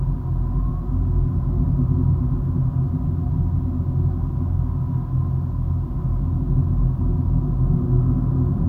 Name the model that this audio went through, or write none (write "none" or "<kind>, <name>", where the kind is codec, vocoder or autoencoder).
none